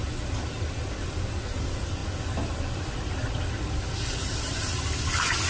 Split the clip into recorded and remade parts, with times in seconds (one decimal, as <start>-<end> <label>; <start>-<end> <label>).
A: 0.0-5.5 recorded